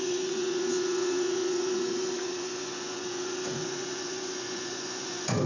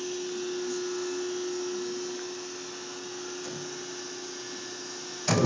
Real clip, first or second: second